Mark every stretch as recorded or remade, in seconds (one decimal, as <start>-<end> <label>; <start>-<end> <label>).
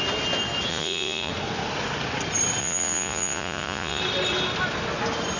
0.0-0.7 recorded; 0.7-1.3 remade; 1.3-2.6 recorded; 2.6-4.0 remade; 4.0-5.4 recorded